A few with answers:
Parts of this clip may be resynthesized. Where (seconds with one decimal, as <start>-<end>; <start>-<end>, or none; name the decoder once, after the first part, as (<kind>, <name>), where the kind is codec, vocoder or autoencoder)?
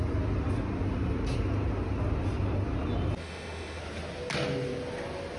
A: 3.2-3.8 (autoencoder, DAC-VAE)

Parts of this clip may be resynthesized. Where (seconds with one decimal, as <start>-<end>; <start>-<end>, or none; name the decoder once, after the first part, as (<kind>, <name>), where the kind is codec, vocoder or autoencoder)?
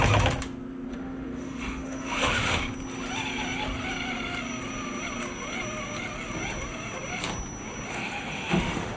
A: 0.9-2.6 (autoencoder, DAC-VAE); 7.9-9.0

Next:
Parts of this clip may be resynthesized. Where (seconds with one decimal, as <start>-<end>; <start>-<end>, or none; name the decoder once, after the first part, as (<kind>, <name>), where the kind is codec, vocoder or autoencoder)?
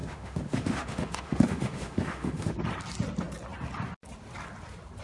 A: 0.0-2.6 (autoencoder, DAC-VAE)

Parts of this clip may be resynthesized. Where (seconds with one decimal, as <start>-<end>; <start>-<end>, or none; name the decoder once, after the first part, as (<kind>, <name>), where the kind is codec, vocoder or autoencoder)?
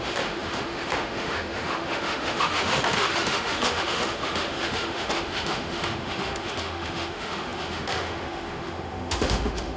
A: 0.0-9.8 (autoencoder, DAC-VAE)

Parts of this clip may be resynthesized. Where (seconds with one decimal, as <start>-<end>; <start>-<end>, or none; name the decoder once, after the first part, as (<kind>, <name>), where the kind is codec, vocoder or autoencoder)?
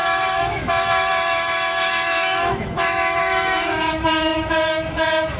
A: 0.0-5.4 (autoencoder, DAC-VAE)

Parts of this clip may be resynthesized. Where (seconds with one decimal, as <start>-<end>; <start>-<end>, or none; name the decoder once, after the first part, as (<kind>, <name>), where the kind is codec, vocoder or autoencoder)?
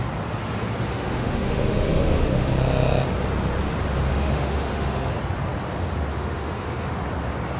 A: 0.9-2.5 (autoencoder, DAC-VAE); 4.1-5.1; 6.1-6.9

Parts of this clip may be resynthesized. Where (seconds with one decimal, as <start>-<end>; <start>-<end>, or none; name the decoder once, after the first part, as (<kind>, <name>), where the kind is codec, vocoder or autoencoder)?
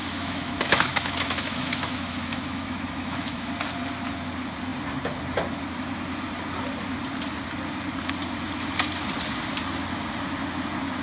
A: 0.0-3.5 (autoencoder, DAC-VAE)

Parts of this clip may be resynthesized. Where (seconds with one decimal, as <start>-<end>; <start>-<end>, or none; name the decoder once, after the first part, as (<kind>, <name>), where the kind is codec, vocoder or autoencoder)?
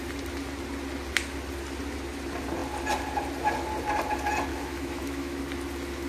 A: 4.5-5.4 (autoencoder, DAC-VAE)